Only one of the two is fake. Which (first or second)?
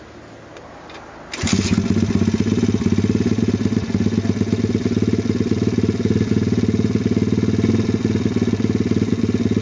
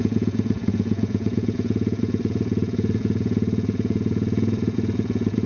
second